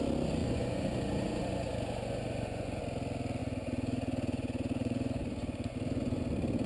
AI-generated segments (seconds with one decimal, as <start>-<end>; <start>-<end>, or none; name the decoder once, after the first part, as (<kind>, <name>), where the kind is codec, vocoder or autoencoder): 0.4-2.8 (vocoder, Vocos); 3.4-6.2

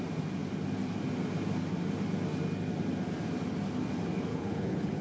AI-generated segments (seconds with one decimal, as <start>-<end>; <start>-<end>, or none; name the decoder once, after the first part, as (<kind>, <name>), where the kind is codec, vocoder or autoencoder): 4.3-5.0 (codec, HILCodec)

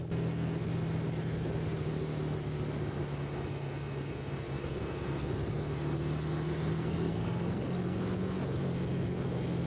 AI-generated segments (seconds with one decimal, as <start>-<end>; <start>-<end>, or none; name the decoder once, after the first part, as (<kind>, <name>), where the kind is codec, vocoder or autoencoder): 6.7-8.0 (codec, SNAC)

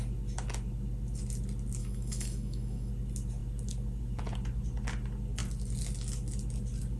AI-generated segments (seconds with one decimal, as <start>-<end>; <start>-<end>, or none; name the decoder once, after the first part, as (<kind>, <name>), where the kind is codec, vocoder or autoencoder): 1.8-2.9 (autoencoder, DAC-VAE)

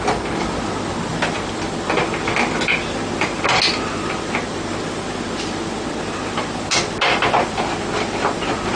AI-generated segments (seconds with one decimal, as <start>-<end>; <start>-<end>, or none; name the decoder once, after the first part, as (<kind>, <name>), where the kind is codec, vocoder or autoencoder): none

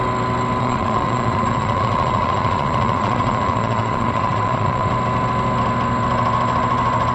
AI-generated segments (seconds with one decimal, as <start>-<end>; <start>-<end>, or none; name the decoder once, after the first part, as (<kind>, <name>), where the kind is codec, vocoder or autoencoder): 0.6-4.9 (vocoder, Vocos)